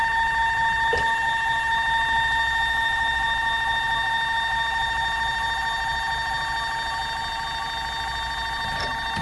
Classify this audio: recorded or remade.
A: recorded